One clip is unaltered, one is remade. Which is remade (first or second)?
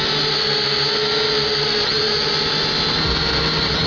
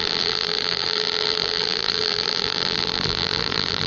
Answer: second